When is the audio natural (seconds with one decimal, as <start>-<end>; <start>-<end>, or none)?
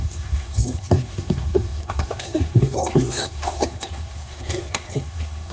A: none